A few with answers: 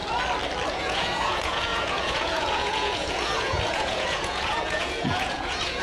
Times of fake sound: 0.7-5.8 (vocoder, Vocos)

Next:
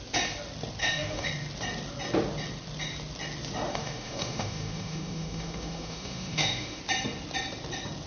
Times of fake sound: 0.8-1.3 (autoencoder, DAC-VAE); 3.7-6.8

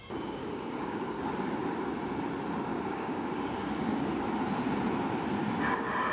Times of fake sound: 0.4-1.3 (codec, DAC); 2.7-4.3

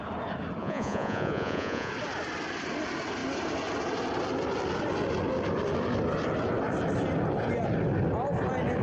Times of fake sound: 0.6-1.9 (vocoder, Vocos)

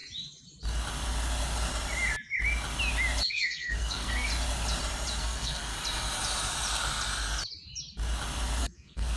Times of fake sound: 3.3-4.3 (codec, SNAC); 5.2-5.7; 8.6-9.2